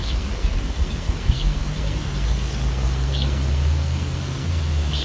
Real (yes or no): no